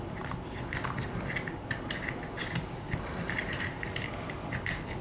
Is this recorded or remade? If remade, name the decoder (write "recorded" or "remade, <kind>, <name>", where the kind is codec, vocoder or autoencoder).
recorded